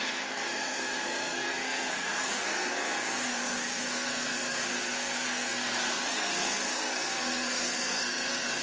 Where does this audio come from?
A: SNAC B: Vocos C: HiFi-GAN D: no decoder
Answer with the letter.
A